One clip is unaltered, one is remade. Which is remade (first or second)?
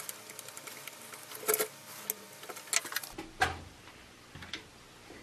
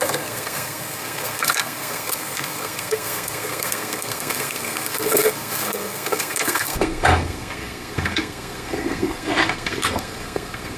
second